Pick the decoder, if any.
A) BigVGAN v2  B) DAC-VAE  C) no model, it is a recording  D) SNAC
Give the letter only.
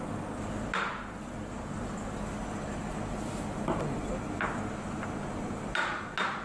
C